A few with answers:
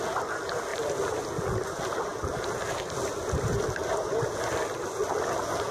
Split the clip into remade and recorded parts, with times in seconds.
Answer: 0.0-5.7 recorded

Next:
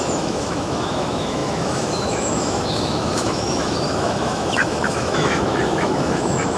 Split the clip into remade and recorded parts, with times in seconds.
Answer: 0.0-6.6 remade